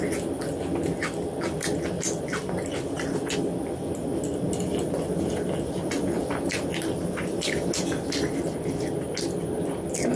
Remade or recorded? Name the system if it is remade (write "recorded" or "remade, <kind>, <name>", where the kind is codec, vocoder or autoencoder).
recorded